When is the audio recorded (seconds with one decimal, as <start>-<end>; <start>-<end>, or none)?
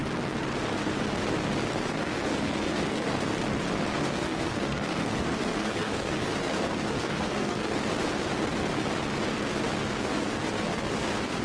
0.0-1.9; 3.1-3.9; 7.7-10.0